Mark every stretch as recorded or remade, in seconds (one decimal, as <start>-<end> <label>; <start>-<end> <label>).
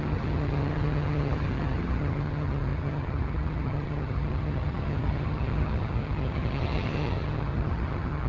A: 0.0-8.3 remade